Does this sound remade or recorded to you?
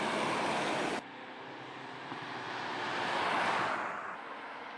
recorded